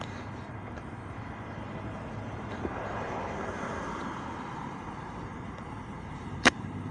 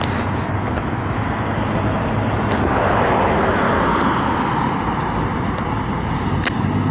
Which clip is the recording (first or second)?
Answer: second